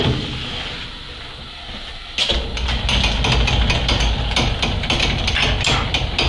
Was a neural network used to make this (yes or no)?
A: no